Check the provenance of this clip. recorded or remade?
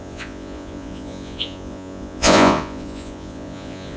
remade